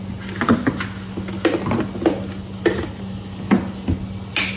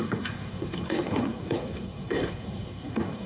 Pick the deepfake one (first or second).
second